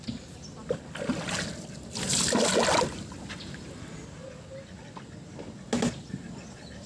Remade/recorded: recorded